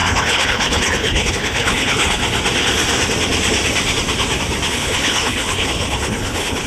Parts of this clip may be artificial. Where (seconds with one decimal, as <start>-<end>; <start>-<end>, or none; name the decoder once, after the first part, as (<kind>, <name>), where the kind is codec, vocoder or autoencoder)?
0.0-2.2 (codec, HILCodec); 4.7-6.7